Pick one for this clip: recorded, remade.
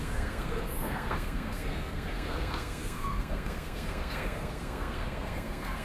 remade